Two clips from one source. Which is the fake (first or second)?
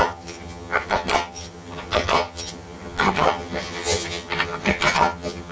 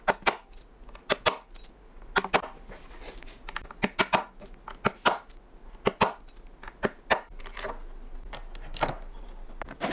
first